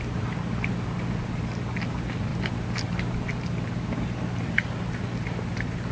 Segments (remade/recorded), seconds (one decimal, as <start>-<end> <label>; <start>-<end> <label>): 0.0-5.9 recorded